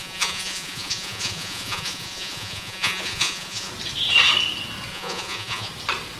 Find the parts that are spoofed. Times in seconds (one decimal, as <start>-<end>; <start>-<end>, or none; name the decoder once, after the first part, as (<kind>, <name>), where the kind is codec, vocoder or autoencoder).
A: 0.0-3.7 (vocoder, Vocos); 4.9-5.7